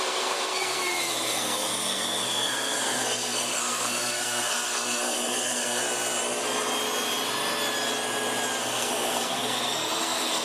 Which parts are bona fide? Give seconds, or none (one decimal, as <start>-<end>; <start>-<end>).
5.8-8.6